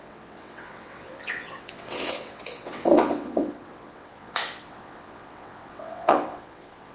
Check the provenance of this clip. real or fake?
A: fake